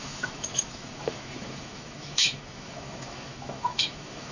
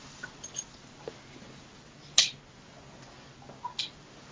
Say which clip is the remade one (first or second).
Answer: first